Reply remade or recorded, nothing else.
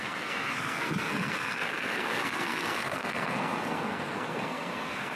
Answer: remade